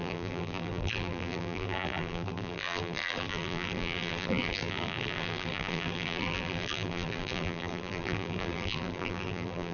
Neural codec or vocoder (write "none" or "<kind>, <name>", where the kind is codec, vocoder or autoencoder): vocoder, BigVGAN v2